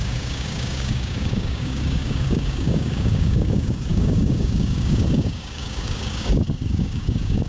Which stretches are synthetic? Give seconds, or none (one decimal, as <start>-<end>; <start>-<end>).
0.0-7.5